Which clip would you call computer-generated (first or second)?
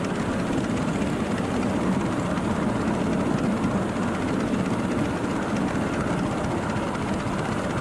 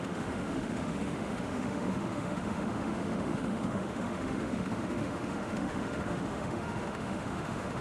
second